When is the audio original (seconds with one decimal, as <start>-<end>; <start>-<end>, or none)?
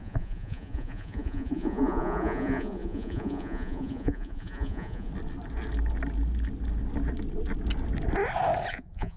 5.1-8.7